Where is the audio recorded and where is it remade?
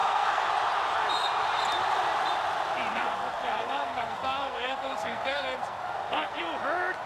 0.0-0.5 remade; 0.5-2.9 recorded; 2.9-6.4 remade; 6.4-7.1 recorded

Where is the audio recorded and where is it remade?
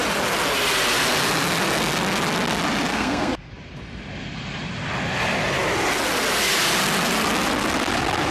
0.0-2.9 recorded; 2.9-3.5 remade; 3.5-8.3 recorded